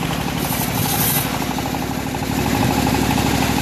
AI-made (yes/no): no